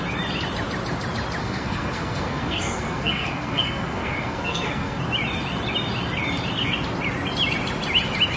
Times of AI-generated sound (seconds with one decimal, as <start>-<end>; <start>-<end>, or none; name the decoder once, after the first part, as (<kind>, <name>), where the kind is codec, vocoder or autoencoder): 1.4-5.0 (codec, SNAC)